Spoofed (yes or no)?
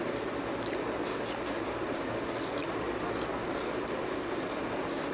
no